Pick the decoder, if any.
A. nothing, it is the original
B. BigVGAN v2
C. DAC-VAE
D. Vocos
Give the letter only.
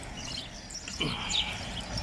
A